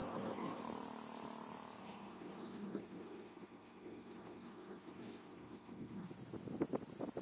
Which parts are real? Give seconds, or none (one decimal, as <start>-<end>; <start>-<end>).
0.6-1.8; 6.1-7.2